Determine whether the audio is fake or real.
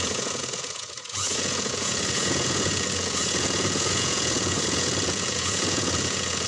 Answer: fake